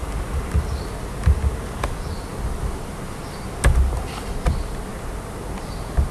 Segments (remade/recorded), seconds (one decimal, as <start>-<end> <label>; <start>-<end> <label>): 0.0-1.9 recorded; 1.9-2.3 remade; 2.3-2.8 recorded; 2.8-4.9 remade; 4.9-5.6 recorded; 5.6-6.1 remade